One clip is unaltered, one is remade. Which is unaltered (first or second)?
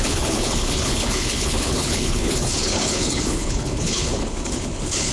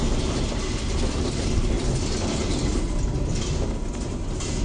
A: second